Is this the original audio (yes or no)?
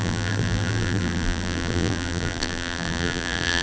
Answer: no